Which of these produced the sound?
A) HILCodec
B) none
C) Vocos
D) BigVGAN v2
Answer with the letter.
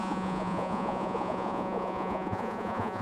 C